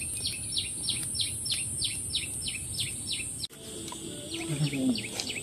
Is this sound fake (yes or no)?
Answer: no